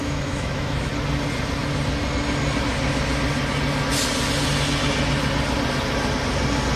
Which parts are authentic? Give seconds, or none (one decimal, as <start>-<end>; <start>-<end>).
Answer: 0.9-6.8